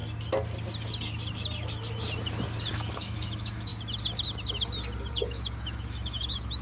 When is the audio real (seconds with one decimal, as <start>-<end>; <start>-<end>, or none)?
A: 0.0-2.7; 3.7-5.1